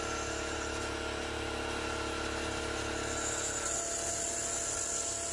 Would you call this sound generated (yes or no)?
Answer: no